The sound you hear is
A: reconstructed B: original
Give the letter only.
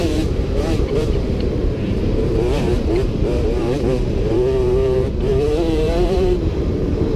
A